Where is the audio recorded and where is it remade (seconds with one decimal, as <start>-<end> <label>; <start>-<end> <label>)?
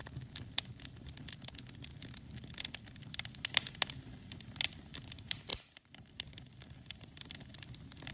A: 0.0-1.9 remade; 1.9-2.8 recorded; 2.8-8.1 remade